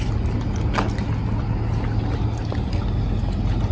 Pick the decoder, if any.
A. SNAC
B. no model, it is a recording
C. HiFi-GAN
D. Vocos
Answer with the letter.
B